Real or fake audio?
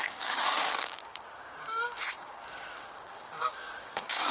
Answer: fake